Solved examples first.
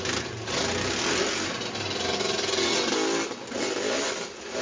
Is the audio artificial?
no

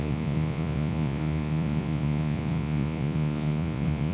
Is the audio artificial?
yes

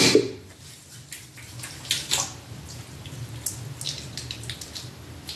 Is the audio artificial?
no